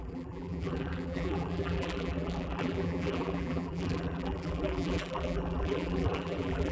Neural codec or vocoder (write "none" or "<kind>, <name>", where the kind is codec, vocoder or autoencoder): vocoder, BigVGAN v2